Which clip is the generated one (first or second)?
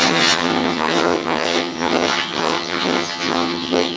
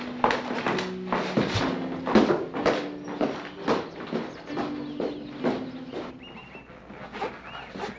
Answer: first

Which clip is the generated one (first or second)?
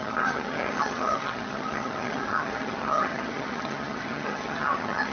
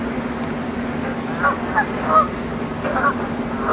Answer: first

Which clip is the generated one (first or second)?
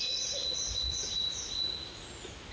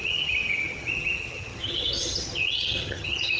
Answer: second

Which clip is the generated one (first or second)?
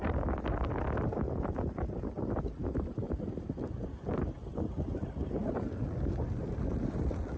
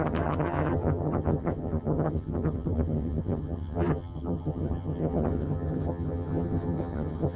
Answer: second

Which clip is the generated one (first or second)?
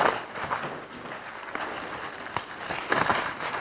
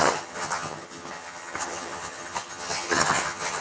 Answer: second